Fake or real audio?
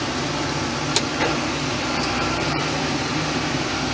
fake